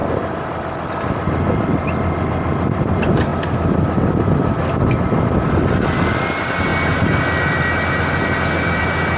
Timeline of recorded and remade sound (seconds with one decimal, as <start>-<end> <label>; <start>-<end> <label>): 0.0-9.2 recorded